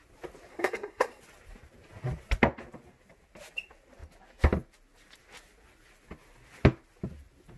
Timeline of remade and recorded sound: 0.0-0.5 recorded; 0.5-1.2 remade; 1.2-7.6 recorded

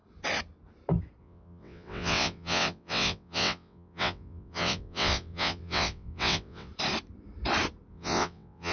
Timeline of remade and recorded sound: 0.0-1.2 recorded; 1.2-6.7 remade; 6.7-7.9 recorded; 7.9-8.7 remade

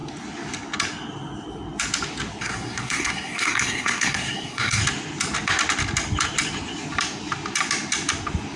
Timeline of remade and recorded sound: 0.0-2.4 recorded; 2.4-4.8 remade; 4.8-8.6 recorded

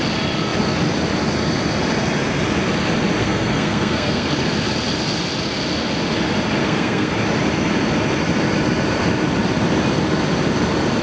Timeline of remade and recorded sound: 0.0-3.2 recorded; 3.2-4.3 remade; 4.3-6.6 recorded; 6.6-7.1 remade; 7.1-11.0 recorded

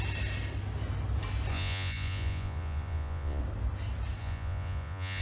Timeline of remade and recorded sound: 0.0-1.5 recorded; 1.5-3.4 remade; 3.4-4.2 recorded; 4.2-5.2 remade

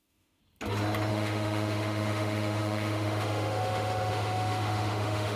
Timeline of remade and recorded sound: 0.0-0.4 remade; 0.4-1.1 recorded; 1.1-5.4 remade

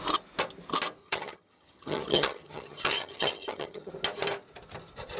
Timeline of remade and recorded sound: 0.0-1.0 recorded; 1.0-3.9 remade; 3.9-5.2 recorded